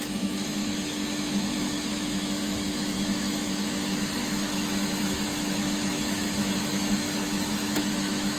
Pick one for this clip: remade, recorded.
remade